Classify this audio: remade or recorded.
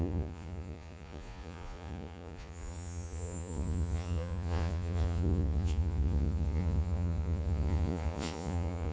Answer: remade